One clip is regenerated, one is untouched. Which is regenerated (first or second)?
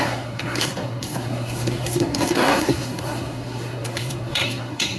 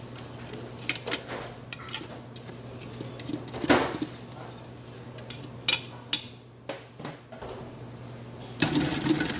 first